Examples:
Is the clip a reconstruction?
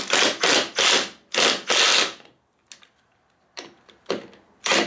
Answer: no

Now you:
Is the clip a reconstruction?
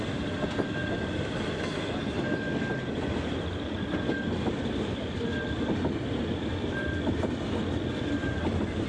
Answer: no